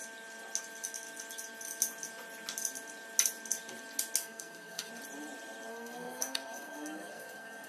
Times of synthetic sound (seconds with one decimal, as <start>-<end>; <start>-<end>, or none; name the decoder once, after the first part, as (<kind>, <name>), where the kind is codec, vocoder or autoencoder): 4.2-4.9 (codec, SNAC); 5.7-7.7